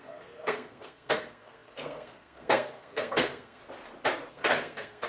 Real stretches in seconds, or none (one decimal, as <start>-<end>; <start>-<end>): 3.6-4.3